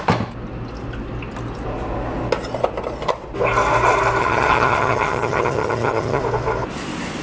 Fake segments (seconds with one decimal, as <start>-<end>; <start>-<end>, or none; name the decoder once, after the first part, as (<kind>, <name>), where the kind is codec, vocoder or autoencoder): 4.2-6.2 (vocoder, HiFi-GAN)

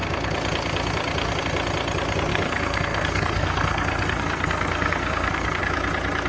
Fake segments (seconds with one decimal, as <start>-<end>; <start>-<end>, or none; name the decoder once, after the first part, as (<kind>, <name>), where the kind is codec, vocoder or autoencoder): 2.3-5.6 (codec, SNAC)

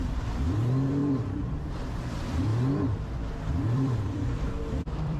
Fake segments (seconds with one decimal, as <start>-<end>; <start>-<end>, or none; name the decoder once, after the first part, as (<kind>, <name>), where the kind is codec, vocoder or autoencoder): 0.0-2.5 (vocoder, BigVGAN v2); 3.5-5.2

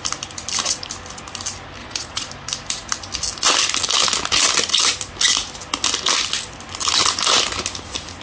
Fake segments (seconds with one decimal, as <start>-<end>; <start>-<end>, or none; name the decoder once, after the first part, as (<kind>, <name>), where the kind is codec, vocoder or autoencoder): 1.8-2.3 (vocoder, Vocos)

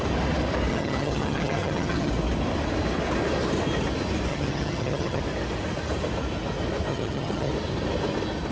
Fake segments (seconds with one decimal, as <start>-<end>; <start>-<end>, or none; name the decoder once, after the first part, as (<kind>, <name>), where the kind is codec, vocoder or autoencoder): 0.7-2.1 (vocoder, HiFi-GAN); 4.3-5.2; 6.9-7.5

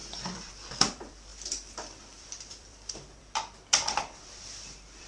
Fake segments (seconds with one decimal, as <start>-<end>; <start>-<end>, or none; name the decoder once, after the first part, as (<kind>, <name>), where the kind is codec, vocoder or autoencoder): 0.0-5.1 (vocoder, BigVGAN v2)

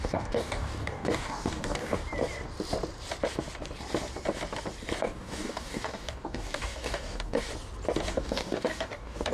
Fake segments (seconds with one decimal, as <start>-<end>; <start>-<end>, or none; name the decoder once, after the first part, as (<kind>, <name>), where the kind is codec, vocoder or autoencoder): 0.0-2.0 (codec, DAC); 5.0-7.5; 8.1-9.3

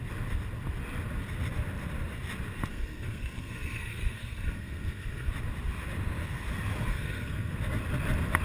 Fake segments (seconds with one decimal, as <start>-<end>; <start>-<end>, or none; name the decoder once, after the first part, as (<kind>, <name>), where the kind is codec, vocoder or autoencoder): 2.7-5.3 (codec, SNAC); 6.9-7.5